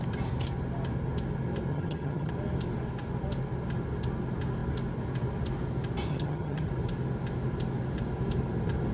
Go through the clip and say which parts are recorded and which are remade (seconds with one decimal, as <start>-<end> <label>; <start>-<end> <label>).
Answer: 0.0-1.7 recorded; 1.7-2.3 remade; 2.3-6.1 recorded; 6.1-6.7 remade; 6.7-8.9 recorded

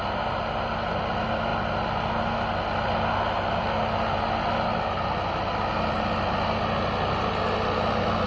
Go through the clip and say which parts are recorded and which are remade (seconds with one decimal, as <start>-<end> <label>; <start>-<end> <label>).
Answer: 0.0-8.3 recorded

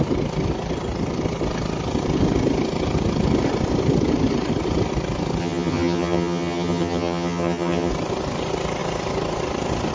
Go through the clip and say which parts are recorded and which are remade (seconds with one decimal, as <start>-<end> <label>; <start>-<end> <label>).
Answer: 0.0-5.4 recorded; 5.4-7.9 remade; 7.9-9.9 recorded

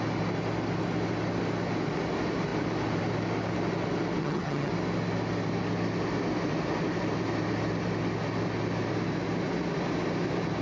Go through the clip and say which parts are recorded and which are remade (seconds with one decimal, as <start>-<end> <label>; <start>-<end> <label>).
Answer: 0.0-4.2 recorded; 4.2-4.7 remade; 4.7-10.6 recorded

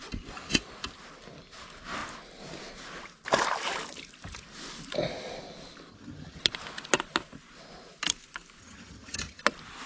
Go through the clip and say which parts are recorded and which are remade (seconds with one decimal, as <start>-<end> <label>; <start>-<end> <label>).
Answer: 0.0-5.9 recorded; 5.9-6.4 remade; 6.4-8.6 recorded; 8.6-9.4 remade; 9.4-9.9 recorded

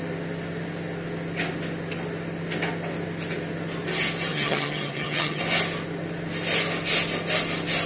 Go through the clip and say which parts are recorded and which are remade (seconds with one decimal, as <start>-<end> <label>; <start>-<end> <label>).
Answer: 0.0-4.3 recorded; 4.3-5.4 remade; 5.4-7.9 recorded

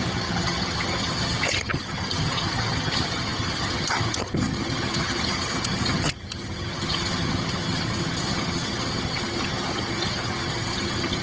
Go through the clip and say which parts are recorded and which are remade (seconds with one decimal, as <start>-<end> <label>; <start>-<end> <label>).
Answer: 0.0-11.2 remade